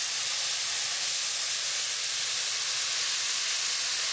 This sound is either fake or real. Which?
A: real